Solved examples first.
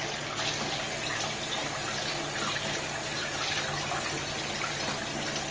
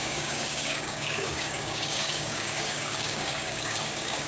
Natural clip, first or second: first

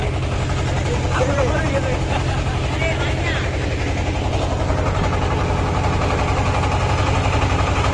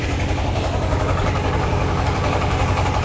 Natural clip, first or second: first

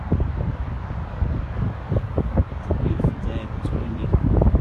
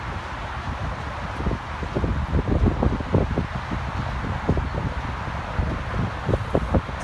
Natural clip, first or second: second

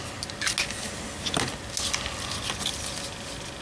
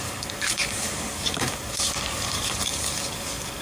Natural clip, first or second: first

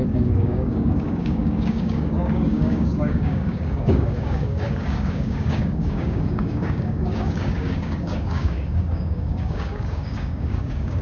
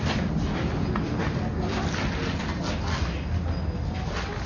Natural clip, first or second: second